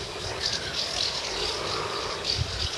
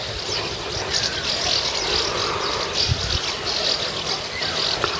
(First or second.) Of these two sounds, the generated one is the first